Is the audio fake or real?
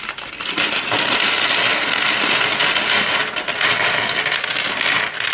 real